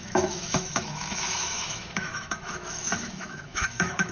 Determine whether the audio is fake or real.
fake